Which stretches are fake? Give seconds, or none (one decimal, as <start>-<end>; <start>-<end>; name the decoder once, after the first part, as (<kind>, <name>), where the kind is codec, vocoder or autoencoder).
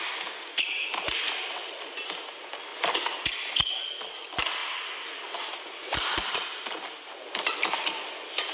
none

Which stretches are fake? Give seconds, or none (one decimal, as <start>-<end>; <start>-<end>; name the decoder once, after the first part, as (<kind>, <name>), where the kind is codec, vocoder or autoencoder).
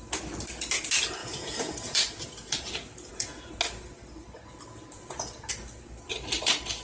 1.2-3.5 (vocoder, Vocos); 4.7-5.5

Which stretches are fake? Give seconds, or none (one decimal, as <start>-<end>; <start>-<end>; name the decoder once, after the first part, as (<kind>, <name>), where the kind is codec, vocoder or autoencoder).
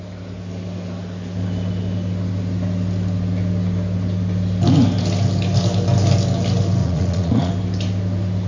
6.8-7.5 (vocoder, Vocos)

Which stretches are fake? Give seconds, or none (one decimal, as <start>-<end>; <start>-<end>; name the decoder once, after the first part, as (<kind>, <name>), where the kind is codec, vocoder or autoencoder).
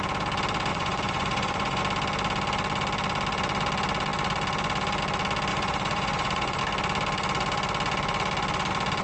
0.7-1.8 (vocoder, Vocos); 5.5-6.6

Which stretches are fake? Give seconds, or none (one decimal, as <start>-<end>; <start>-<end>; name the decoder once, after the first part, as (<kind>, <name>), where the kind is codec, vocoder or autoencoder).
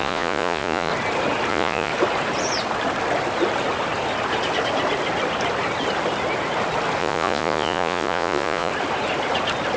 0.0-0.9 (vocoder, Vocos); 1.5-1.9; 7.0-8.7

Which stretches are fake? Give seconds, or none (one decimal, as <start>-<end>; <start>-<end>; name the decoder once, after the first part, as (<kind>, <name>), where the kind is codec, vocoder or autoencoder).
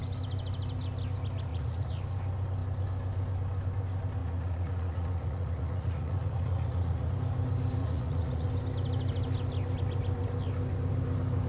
1.5-2.0 (vocoder, Vocos); 4.2-7.1; 7.8-8.5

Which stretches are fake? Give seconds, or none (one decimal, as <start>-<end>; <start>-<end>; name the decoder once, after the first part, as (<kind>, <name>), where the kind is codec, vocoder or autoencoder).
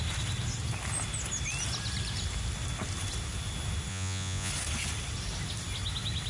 3.9-4.5 (vocoder, Vocos)